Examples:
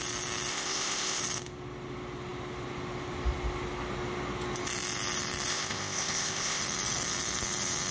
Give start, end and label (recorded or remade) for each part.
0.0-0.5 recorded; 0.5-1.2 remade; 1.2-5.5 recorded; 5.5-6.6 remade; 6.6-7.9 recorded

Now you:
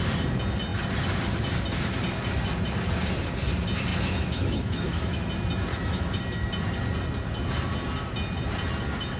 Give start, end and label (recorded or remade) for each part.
0.0-3.9 recorded; 3.9-5.3 remade; 5.3-5.7 recorded; 5.7-6.2 remade; 6.2-9.2 recorded

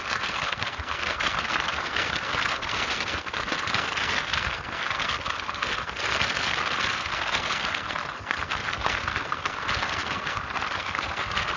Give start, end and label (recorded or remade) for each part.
0.0-11.6 remade